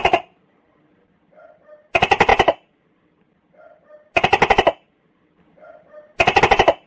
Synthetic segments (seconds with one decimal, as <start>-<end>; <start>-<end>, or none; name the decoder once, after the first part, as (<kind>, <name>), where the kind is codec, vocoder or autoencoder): none